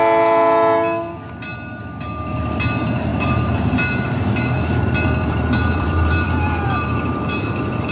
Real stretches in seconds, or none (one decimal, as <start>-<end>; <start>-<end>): 0.0-3.1